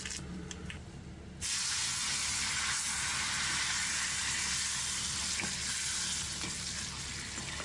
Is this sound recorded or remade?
recorded